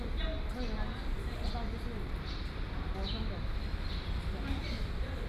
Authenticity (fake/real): real